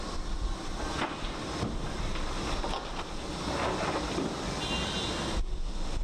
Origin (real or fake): real